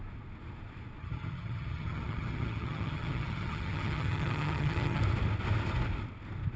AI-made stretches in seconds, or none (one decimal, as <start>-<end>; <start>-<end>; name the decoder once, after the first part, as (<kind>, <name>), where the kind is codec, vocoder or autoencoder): 1.0-5.0 (vocoder, HiFi-GAN)